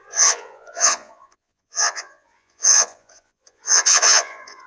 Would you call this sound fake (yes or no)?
yes